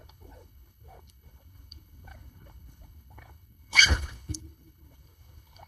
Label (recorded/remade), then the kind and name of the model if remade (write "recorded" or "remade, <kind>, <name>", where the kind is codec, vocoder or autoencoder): remade, codec, HILCodec